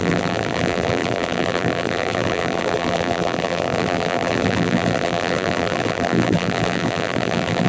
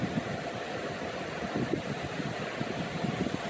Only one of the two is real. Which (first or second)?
second